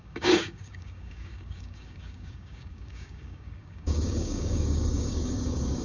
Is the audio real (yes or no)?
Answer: no